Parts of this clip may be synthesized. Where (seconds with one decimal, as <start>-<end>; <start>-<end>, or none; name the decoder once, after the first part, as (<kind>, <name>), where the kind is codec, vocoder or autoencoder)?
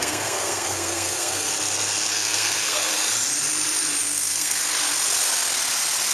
0.0-1.5 (codec, SNAC); 2.1-2.9; 4.0-4.6